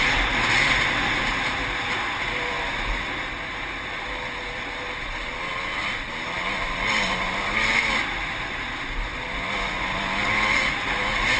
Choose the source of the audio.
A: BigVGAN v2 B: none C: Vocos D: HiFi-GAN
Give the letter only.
B